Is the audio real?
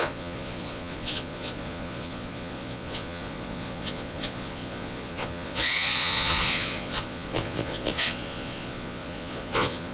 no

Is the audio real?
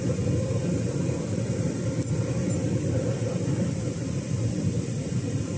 no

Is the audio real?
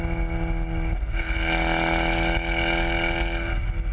yes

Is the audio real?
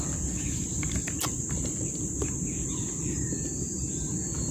yes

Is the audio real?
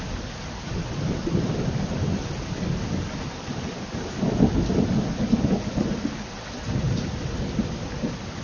yes